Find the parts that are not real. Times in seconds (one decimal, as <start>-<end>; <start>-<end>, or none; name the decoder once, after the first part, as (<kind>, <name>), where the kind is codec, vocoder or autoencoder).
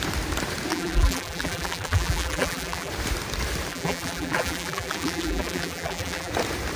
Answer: 0.7-2.9 (vocoder, BigVGAN v2); 3.7-6.3